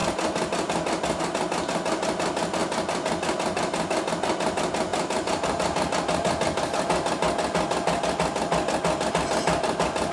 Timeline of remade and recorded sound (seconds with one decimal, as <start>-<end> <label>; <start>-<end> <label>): 0.0-1.2 remade; 1.2-10.1 recorded